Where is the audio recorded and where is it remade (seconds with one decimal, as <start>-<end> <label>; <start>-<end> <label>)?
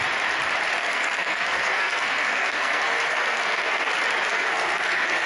0.0-0.8 recorded; 0.8-3.9 remade; 3.9-4.3 recorded; 4.3-5.3 remade